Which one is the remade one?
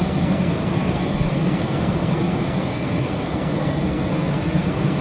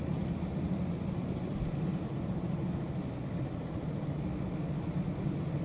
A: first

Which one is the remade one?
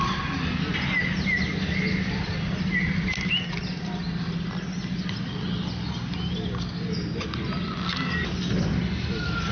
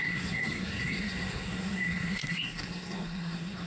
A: second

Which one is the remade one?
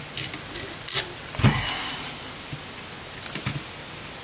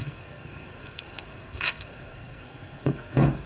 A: second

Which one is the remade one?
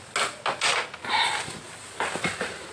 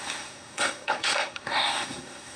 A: second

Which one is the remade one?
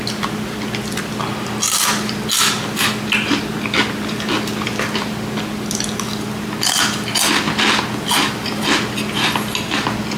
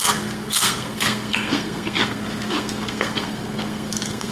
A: second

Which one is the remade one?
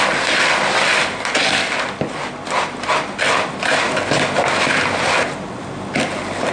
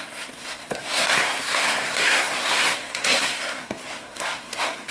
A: second